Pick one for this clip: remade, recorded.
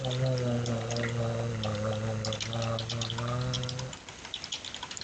recorded